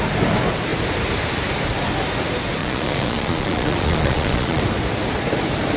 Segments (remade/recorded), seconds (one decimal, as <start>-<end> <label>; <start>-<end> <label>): 0.0-2.6 recorded; 2.6-4.6 remade; 4.6-5.8 recorded